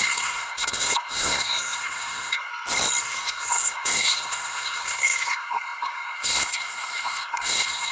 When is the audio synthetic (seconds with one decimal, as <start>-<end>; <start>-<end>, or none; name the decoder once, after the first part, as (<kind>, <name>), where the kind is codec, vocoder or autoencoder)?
0.0-2.5 (codec, SNAC); 3.0-7.9